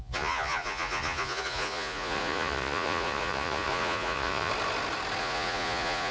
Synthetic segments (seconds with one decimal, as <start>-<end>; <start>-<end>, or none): 0.0-4.5; 5.2-6.1